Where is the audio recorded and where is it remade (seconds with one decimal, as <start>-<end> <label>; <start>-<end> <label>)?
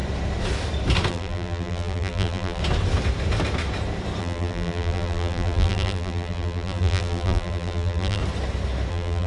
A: 0.0-1.1 recorded; 1.1-2.6 remade; 2.6-4.2 recorded; 4.2-8.2 remade; 8.2-8.9 recorded; 8.9-9.3 remade